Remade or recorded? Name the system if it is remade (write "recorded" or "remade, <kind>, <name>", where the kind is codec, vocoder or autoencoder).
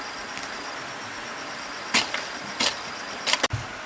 recorded